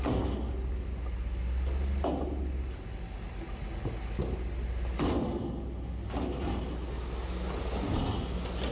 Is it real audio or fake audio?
real